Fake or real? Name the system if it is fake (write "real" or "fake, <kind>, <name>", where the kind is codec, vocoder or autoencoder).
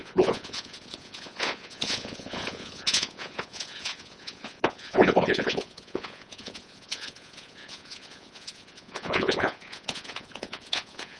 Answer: fake, vocoder, Vocos